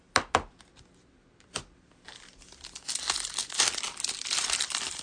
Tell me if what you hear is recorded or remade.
recorded